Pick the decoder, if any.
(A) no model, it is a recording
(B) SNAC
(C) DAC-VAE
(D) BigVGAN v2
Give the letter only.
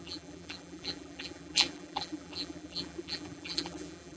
D